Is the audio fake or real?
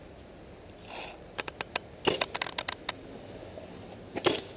real